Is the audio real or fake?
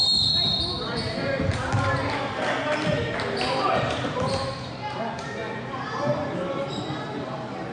real